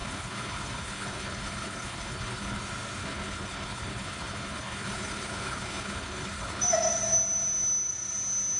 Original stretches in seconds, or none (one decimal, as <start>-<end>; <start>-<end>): 2.6-3.0; 6.6-8.6